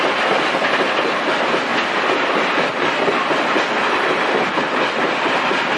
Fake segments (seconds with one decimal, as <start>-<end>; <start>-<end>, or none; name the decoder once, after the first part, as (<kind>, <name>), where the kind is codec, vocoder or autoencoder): none